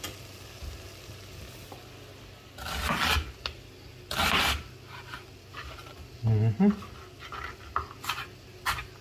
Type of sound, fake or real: real